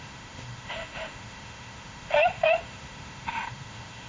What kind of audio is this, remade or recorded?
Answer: remade